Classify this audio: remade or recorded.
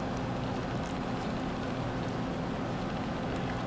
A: recorded